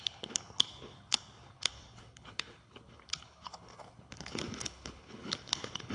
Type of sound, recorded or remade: remade